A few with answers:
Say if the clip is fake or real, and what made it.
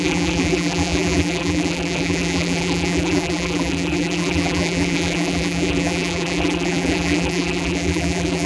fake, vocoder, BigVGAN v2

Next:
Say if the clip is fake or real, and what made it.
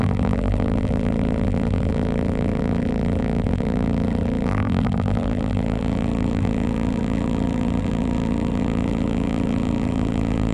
fake, vocoder, BigVGAN v2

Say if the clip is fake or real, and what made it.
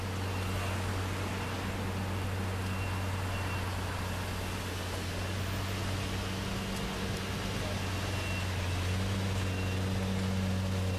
real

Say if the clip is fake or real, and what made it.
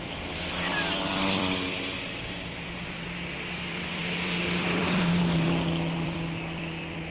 fake, vocoder, BigVGAN v2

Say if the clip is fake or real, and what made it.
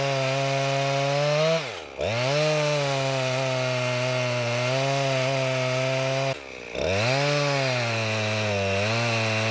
real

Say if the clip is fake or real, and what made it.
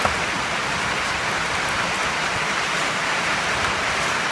real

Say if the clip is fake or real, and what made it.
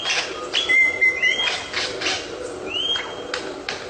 real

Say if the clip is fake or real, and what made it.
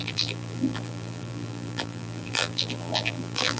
fake, vocoder, BigVGAN v2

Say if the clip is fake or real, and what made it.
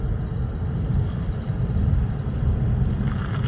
real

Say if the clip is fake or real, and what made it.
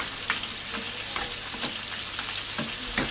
real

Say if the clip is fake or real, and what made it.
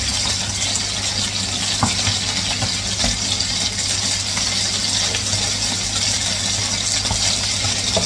real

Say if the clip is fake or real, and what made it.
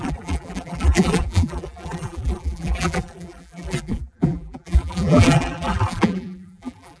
fake, vocoder, BigVGAN v2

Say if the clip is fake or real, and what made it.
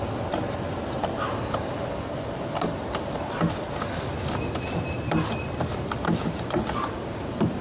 real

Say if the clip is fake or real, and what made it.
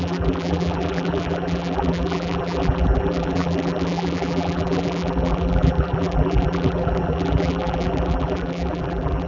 fake, vocoder, BigVGAN v2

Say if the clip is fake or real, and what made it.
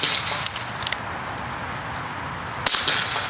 real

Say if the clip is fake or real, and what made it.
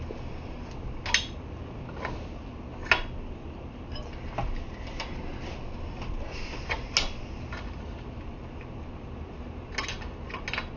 real